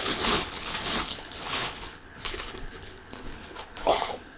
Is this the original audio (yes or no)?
no